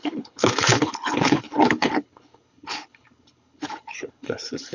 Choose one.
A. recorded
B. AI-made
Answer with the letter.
B